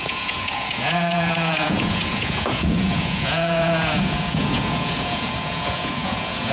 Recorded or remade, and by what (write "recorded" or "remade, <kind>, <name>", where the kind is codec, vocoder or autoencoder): remade, vocoder, Vocos